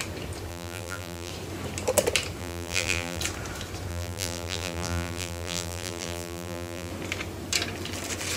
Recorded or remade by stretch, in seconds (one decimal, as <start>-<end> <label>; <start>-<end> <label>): 0.0-0.5 recorded; 0.5-1.3 remade; 1.3-2.4 recorded; 2.4-3.2 remade; 3.2-3.9 recorded; 3.9-6.9 remade; 6.9-8.4 recorded